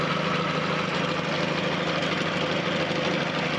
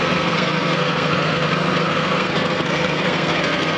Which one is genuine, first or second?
first